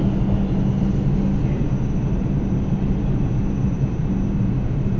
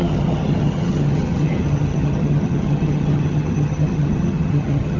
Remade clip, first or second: second